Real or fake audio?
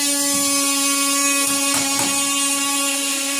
real